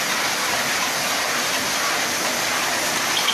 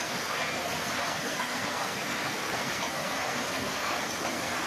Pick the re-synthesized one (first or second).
second